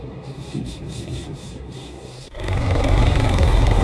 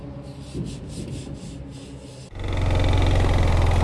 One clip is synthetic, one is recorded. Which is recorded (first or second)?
second